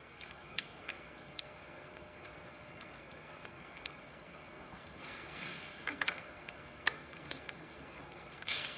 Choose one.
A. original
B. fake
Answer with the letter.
B